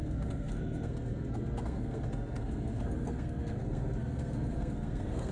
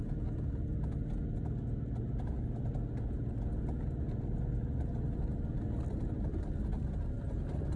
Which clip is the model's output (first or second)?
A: first